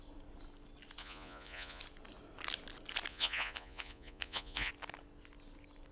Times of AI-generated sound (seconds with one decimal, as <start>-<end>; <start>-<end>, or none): 1.0-1.8; 3.1-4.7